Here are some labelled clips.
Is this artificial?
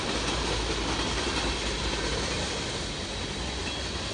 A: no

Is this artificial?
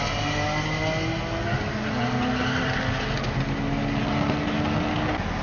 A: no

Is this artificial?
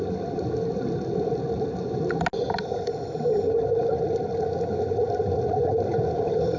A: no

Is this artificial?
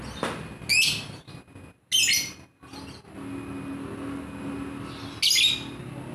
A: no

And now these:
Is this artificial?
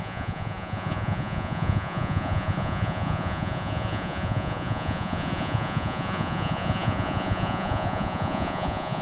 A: yes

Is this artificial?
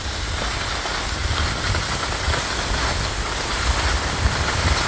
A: no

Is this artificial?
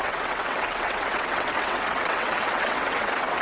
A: yes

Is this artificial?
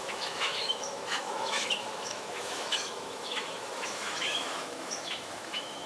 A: yes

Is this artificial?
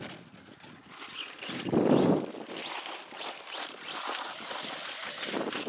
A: no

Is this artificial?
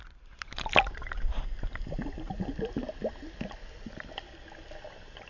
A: no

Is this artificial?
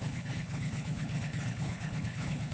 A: yes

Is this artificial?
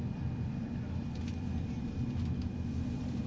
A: yes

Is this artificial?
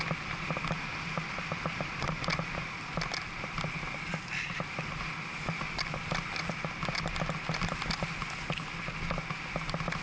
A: no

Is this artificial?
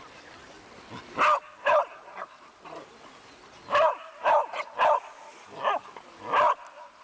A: no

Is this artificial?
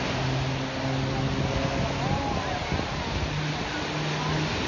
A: no